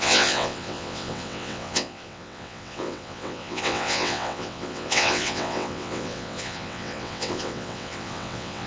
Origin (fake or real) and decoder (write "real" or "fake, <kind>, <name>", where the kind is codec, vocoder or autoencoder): fake, vocoder, WaveNeXt